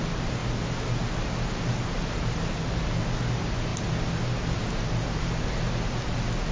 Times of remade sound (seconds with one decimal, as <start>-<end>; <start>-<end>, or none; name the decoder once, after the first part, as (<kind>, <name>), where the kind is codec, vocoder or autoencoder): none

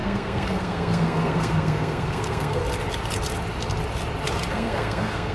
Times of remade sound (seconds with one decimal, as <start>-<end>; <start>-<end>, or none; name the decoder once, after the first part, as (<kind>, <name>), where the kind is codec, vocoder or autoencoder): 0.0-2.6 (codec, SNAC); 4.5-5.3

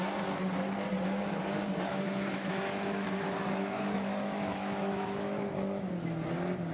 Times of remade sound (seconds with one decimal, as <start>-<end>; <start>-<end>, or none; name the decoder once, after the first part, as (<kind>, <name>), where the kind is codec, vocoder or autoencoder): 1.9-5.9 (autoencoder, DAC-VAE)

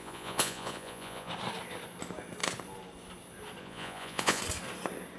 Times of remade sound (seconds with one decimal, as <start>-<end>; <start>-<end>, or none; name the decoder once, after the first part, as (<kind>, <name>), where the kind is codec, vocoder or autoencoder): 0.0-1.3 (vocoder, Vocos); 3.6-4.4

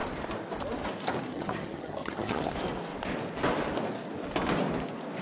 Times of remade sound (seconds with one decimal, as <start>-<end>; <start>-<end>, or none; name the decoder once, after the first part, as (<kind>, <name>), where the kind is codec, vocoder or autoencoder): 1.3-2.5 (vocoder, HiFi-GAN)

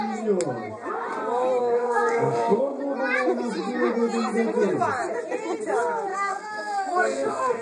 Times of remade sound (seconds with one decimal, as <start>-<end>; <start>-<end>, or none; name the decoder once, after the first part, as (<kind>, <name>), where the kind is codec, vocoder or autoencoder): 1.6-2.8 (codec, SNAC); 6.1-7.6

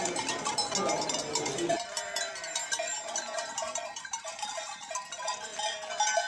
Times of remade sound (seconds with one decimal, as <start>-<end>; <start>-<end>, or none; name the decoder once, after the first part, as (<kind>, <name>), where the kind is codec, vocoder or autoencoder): 0.0-0.6 (vocoder, BigVGAN v2); 1.7-5.5